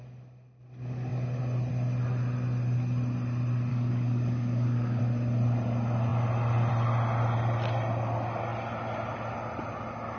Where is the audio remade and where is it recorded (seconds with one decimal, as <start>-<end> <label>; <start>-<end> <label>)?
0.0-3.7 recorded; 3.7-5.0 remade; 5.0-10.2 recorded